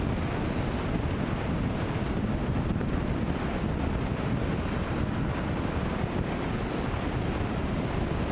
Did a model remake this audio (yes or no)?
no